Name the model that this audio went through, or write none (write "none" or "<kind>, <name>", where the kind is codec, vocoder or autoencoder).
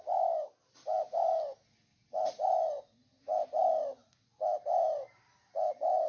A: none